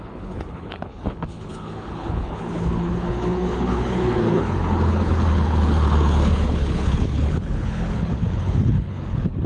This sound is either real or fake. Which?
fake